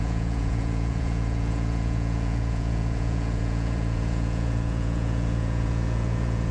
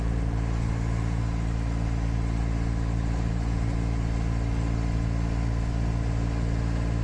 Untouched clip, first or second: second